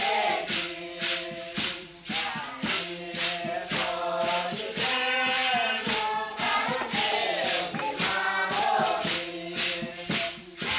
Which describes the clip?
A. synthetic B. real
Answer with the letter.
B